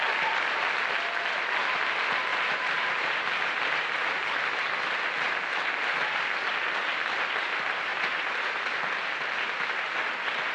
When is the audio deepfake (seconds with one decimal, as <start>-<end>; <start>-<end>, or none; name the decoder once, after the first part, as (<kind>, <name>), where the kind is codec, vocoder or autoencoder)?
2.3-3.6 (vocoder, BigVGAN v2); 7.9-8.9